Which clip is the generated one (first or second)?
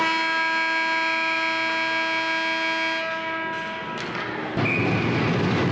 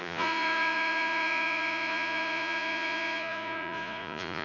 second